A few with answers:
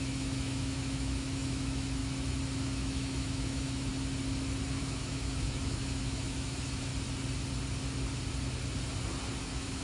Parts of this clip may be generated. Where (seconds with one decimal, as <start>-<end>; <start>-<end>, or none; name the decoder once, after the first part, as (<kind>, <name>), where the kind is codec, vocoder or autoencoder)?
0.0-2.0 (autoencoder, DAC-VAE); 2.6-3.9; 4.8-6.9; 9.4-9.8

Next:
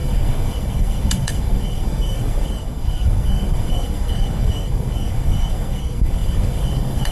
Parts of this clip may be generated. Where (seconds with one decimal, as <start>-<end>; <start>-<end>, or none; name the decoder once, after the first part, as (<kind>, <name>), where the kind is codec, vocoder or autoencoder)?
0.0-7.1 (codec, SNAC)

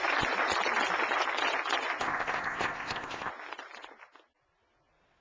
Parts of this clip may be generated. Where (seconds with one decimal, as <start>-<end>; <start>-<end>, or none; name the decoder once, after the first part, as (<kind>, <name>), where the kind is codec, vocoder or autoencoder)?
2.0-3.3 (codec, ZipCodec)

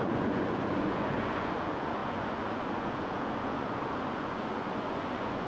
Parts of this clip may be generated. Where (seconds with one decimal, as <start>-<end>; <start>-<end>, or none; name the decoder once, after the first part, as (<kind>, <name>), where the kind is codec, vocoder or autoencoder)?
0.0-5.5 (vocoder, Vocos)